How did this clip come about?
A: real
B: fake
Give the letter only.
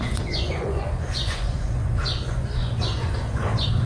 B